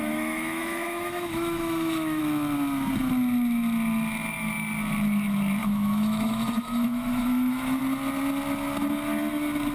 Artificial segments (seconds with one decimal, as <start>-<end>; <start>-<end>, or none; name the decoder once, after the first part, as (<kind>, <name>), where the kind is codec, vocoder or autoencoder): 0.0-2.2 (autoencoder, DAC-VAE); 5.6-7.8